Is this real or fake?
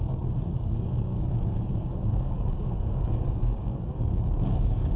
fake